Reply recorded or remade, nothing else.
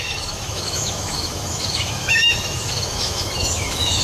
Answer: remade